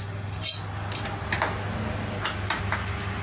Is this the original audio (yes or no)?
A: yes